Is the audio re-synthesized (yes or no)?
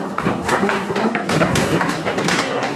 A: yes